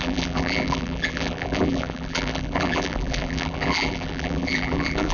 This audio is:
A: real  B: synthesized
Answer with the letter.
B